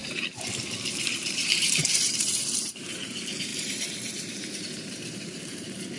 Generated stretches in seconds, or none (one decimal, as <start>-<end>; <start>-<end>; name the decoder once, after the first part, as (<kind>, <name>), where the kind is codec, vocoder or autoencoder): 0.0-6.0 (vocoder, BigVGAN v2)